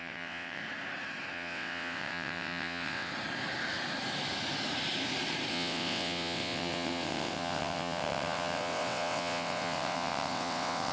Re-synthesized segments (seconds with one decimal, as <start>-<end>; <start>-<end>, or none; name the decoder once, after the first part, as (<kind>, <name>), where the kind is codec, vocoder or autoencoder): 0.0-0.6 (vocoder, WaveNeXt); 1.3-3.1; 5.5-10.9